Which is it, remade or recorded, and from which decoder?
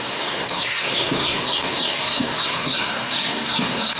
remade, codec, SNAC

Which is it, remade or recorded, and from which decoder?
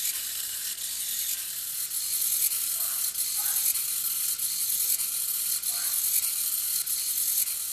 recorded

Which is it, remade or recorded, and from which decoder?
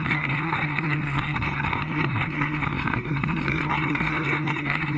remade, codec, SNAC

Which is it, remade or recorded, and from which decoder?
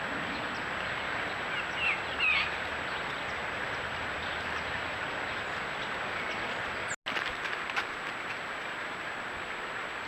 recorded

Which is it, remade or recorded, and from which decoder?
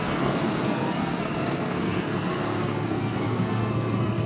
remade, codec, SNAC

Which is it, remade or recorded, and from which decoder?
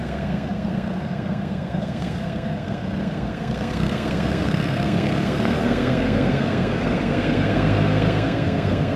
remade, codec, SNAC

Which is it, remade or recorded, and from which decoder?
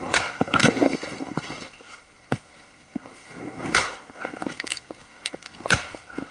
remade, codec, SNAC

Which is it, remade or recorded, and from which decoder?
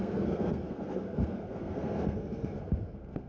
remade, codec, SNAC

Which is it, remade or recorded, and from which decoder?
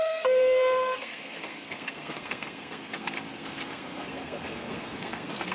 remade, codec, SNAC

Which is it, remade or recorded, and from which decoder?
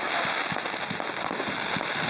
recorded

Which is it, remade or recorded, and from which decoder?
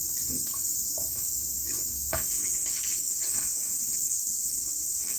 remade, codec, SNAC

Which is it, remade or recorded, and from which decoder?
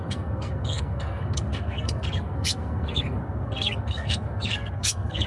remade, codec, SNAC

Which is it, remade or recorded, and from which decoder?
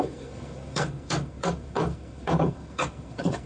remade, codec, SNAC